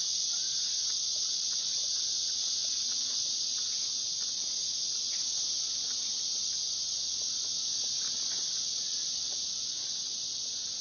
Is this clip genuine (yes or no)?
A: yes